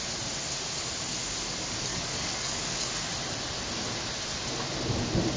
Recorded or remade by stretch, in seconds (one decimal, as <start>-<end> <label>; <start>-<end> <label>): 0.0-1.9 recorded; 1.9-2.9 remade; 2.9-5.4 recorded